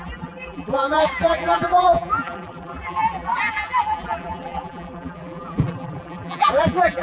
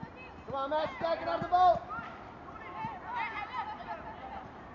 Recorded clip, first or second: second